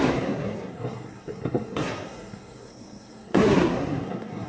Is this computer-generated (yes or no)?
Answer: yes